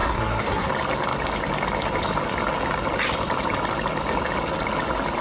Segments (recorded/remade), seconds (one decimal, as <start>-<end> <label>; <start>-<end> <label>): 0.0-0.7 remade; 0.7-5.2 recorded